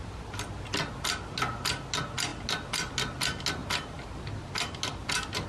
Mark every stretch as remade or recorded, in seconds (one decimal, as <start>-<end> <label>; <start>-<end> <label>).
0.0-5.5 recorded